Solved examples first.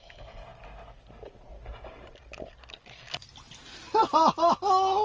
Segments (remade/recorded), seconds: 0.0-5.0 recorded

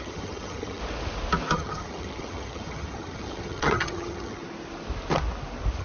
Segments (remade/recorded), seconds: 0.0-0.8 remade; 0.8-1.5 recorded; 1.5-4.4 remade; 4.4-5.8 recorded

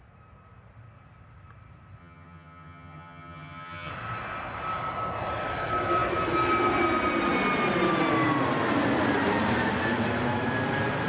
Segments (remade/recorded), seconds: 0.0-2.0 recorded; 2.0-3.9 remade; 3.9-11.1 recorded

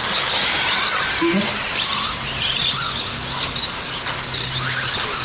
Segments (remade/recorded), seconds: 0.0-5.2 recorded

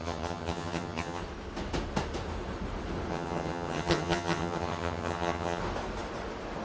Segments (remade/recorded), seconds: 0.0-1.2 remade; 1.2-3.1 recorded; 3.1-5.6 remade; 5.6-6.6 recorded

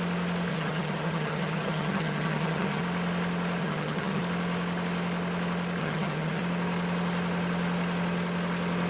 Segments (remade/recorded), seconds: 0.0-0.5 recorded; 0.5-2.8 remade; 2.8-3.6 recorded; 3.6-4.2 remade; 4.2-5.8 recorded; 5.8-6.4 remade; 6.4-8.9 recorded

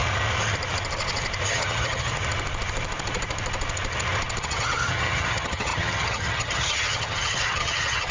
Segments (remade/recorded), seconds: 0.0-1.5 recorded; 1.5-2.1 remade; 2.1-4.4 recorded; 4.4-8.1 remade